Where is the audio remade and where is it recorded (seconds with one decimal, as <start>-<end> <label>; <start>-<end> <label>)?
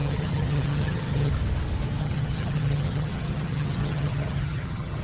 0.0-1.3 remade; 1.3-2.0 recorded; 2.0-5.0 remade